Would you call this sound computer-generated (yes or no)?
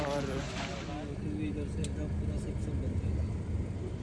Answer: no